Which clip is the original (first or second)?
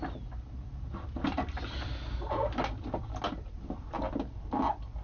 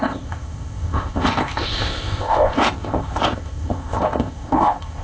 first